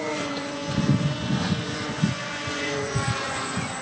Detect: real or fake fake